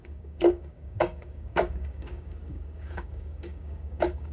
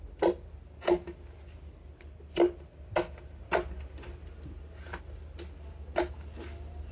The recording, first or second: second